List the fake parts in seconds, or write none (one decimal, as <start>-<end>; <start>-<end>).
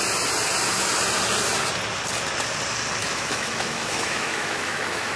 3.0-5.2